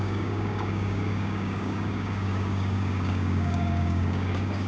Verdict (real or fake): fake